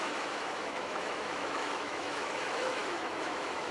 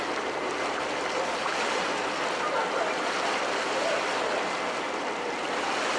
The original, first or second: second